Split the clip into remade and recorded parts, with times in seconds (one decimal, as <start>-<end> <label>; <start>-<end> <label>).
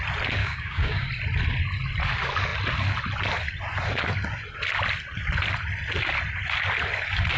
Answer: 0.0-0.4 recorded; 0.4-1.1 remade; 1.1-7.4 recorded